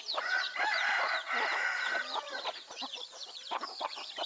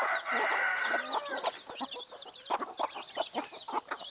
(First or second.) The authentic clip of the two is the second